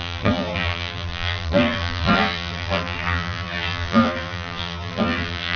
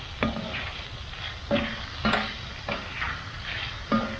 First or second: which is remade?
first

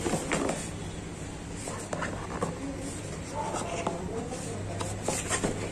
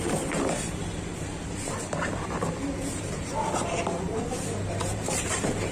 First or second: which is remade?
second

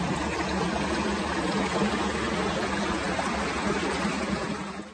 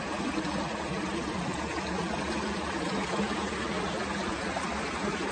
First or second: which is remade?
second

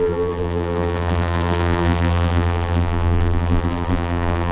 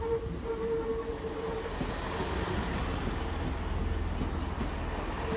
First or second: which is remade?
first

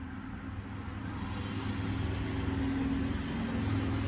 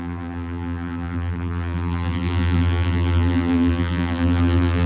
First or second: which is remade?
second